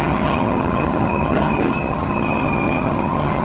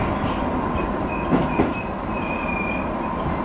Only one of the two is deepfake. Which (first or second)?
first